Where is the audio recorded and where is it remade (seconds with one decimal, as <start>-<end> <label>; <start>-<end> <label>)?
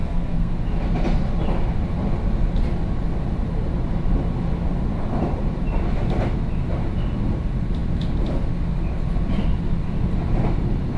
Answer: 0.0-0.5 remade; 0.5-11.0 recorded